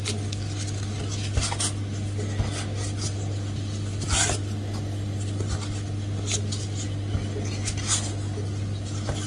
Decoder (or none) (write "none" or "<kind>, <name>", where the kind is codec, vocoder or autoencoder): none